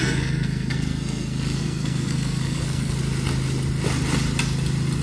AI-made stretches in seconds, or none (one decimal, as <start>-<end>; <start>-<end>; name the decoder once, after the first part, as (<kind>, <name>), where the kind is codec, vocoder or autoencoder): 0.0-3.0 (codec, SNAC)

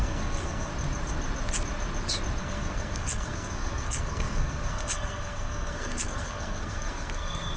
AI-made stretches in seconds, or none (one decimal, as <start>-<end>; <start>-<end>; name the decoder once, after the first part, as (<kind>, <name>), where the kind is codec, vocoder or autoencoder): 0.0-0.7 (codec, SNAC); 2.4-7.6

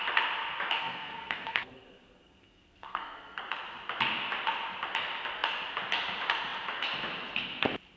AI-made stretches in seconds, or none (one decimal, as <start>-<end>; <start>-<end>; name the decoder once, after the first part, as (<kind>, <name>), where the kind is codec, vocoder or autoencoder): 0.8-3.4 (codec, SNAC)

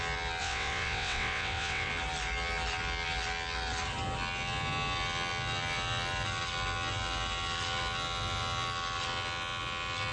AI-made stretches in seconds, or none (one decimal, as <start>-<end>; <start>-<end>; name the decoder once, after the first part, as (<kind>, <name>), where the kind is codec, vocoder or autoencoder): 0.4-1.9 (vocoder, WaveNeXt)

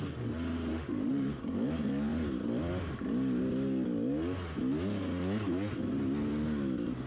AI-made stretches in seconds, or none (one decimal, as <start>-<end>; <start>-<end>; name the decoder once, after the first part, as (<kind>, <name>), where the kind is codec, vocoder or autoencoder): 0.7-1.4 (autoencoder, DAC-VAE)

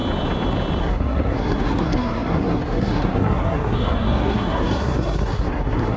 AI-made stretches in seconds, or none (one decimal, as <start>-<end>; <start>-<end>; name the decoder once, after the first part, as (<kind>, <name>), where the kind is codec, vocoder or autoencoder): 0.8-6.0 (codec, SNAC)